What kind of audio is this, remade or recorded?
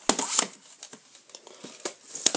recorded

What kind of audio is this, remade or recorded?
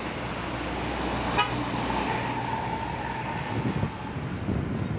recorded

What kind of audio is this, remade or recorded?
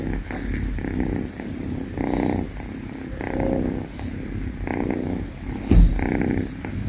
recorded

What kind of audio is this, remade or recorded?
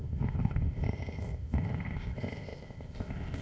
remade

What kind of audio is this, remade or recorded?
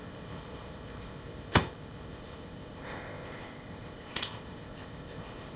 remade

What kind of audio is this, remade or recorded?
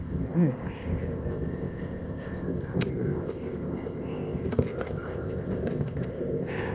remade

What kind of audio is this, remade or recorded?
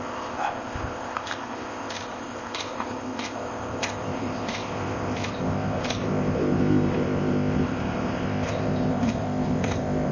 remade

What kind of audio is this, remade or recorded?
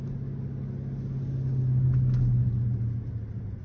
recorded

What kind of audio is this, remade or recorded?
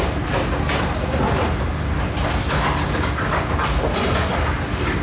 recorded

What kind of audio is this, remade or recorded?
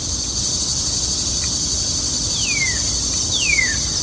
recorded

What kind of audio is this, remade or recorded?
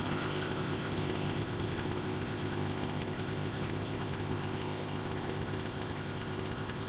remade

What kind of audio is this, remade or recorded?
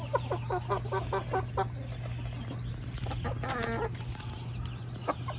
recorded